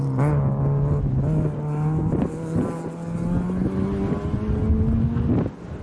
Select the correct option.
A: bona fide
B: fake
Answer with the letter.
A